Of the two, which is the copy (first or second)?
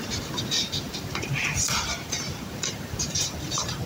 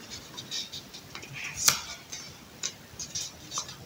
first